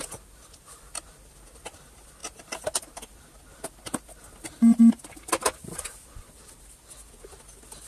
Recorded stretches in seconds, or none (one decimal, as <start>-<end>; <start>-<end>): 0.0-7.9